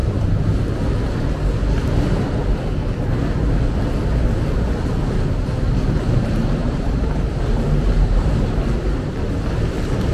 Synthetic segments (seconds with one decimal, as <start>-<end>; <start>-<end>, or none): 0.0-0.6; 6.6-8.6